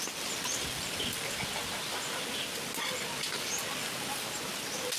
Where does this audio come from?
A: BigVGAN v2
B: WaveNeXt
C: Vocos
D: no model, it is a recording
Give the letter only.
D